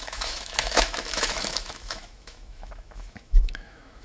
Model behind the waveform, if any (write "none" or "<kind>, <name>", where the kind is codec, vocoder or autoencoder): autoencoder, DAC-VAE